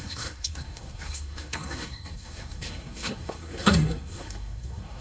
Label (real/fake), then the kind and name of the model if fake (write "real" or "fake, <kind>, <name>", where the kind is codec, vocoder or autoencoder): fake, codec, SNAC